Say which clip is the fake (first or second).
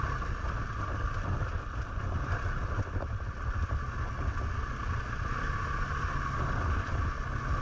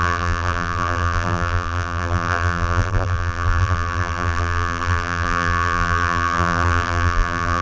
second